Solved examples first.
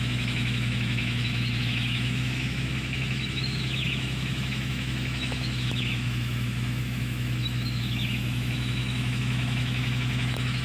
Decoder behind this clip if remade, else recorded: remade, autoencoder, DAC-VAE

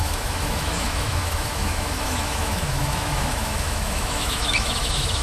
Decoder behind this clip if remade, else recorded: remade, autoencoder, DAC-VAE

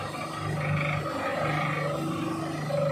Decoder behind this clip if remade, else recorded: recorded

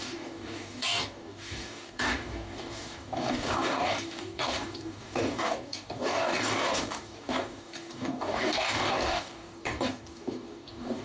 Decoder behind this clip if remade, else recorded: remade, codec, DAC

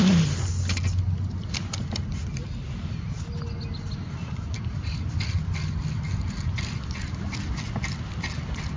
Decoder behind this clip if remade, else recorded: recorded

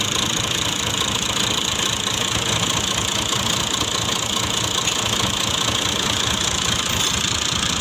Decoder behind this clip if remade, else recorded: recorded